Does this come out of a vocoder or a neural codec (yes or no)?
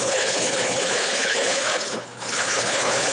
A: yes